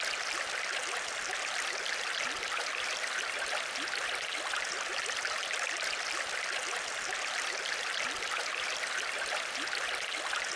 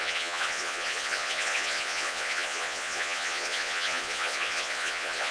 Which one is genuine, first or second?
first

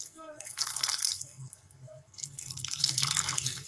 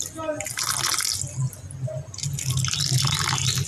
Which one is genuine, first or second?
second